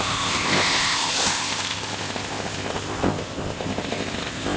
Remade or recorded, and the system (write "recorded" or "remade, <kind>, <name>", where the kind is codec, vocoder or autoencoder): remade, codec, ZipCodec